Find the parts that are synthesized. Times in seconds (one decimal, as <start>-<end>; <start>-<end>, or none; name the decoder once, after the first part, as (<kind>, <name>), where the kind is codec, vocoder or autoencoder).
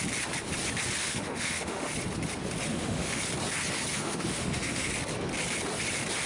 1.0-1.9 (autoencoder, DAC-VAE); 2.7-3.2; 3.9-4.9